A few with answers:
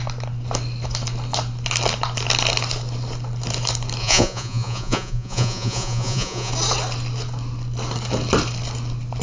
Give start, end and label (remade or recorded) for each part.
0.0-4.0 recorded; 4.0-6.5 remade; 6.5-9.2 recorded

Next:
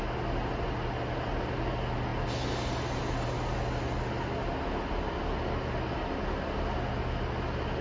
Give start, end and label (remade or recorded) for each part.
0.0-7.8 recorded

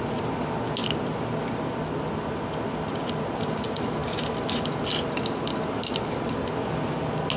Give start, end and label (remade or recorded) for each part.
0.0-7.4 recorded

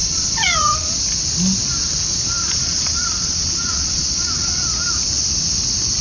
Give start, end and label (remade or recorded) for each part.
0.0-1.0 remade; 1.0-2.4 recorded; 2.4-4.6 remade; 4.6-6.0 recorded

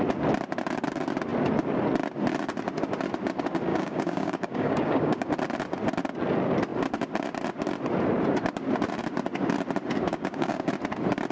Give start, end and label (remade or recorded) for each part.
0.0-3.7 recorded; 3.7-5.3 remade; 5.3-10.1 recorded; 10.1-10.7 remade; 10.7-11.3 recorded

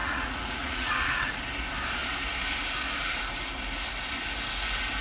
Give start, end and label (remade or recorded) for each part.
0.0-1.4 remade; 1.4-5.0 recorded

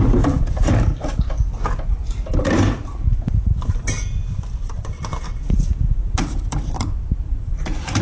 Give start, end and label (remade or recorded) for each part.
0.0-3.1 recorded; 3.1-8.0 remade

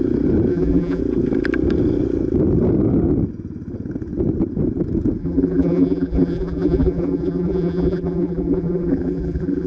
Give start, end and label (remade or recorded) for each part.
0.0-0.5 recorded; 0.5-1.0 remade; 1.0-5.2 recorded; 5.2-9.7 remade